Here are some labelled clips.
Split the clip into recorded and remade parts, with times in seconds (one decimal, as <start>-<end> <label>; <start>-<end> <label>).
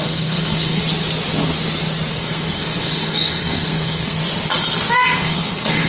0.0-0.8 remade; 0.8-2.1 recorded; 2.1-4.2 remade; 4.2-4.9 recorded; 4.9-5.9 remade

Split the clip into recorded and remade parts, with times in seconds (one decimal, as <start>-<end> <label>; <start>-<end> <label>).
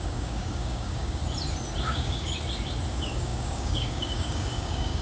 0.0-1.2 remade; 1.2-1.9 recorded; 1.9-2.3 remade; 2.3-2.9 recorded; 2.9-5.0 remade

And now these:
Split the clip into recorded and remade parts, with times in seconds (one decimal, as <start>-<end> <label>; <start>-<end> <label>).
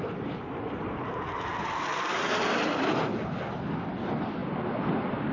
0.0-1.5 remade; 1.5-3.9 recorded; 3.9-4.4 remade; 4.4-5.3 recorded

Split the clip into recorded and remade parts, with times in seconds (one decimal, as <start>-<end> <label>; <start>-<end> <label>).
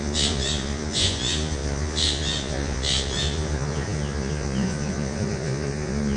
0.0-6.2 remade